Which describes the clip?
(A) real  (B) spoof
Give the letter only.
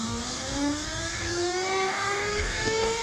B